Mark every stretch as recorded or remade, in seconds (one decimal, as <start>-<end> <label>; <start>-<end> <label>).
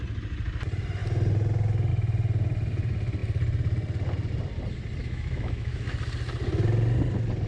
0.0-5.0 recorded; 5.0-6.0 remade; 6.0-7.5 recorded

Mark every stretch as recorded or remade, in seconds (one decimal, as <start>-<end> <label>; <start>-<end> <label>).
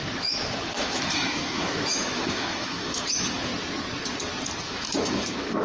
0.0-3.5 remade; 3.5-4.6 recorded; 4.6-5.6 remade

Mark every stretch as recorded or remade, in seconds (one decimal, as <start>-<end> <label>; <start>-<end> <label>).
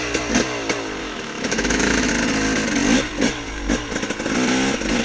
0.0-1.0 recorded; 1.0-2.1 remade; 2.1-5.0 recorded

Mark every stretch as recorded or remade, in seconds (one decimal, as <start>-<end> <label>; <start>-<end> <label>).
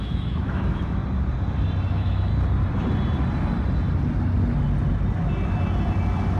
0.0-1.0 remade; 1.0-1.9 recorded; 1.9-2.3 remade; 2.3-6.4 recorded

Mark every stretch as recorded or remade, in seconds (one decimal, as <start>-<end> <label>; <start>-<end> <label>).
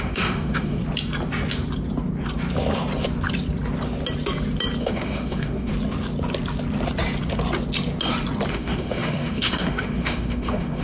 0.0-0.8 remade; 0.8-4.8 recorded; 4.8-5.7 remade; 5.7-8.5 recorded; 8.5-10.8 remade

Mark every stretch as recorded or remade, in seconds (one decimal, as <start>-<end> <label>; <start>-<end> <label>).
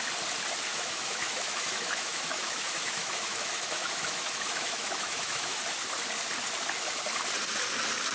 0.0-0.7 recorded; 0.7-5.6 remade; 5.6-8.1 recorded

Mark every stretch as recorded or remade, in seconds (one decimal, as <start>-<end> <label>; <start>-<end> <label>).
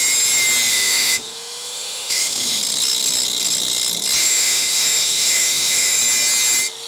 0.0-0.7 recorded; 0.7-2.6 remade; 2.6-4.2 recorded; 4.2-6.0 remade; 6.0-6.9 recorded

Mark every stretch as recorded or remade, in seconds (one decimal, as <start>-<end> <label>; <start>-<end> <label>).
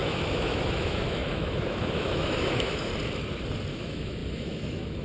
0.0-2.9 remade; 2.9-3.7 recorded; 3.7-5.0 remade